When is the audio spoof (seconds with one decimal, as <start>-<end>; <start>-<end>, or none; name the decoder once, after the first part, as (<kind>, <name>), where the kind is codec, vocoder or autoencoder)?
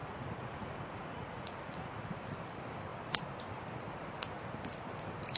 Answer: 0.0-2.2 (vocoder, Vocos)